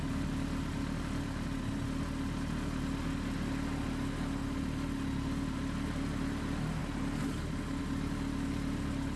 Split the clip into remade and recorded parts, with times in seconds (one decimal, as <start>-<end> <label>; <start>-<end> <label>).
0.0-9.2 recorded